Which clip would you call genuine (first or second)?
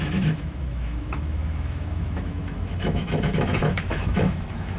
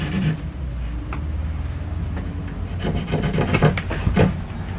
second